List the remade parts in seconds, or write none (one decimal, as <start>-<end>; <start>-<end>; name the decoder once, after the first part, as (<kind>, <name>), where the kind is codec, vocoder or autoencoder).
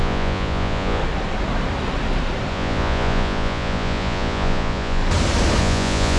0.0-1.0 (vocoder, Vocos); 2.5-5.0; 5.6-6.2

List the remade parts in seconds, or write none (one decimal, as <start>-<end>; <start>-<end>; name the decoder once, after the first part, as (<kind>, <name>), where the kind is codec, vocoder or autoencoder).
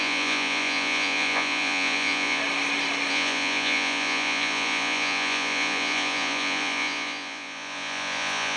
0.0-2.4 (vocoder, Vocos); 3.1-8.6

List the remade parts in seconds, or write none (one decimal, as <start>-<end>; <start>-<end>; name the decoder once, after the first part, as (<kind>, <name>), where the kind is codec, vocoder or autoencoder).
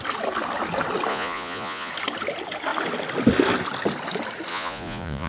1.1-1.9 (vocoder, Vocos); 4.5-5.3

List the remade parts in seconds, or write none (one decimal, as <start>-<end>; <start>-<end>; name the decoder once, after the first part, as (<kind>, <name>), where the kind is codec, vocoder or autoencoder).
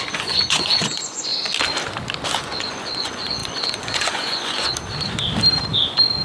0.0-1.3 (vocoder, Vocos); 2.4-4.7; 5.7-6.2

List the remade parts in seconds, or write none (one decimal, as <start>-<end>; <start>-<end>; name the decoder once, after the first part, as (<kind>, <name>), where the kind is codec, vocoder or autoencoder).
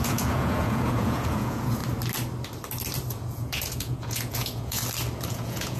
0.0-1.8 (vocoder, Vocos); 3.1-4.8; 5.3-5.8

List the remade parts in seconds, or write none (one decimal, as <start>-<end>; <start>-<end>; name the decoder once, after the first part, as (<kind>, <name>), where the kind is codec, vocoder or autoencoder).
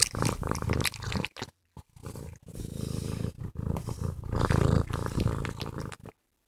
none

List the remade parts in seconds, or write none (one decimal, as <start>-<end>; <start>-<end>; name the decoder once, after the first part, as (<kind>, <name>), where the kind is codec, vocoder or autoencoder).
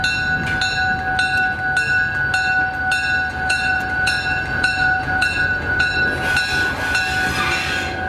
3.3-5.9 (vocoder, Vocos)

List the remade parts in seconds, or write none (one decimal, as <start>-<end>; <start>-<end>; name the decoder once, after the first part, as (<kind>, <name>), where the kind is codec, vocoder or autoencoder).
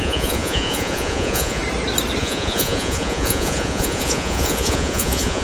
0.0-1.6 (vocoder, Vocos); 2.2-5.4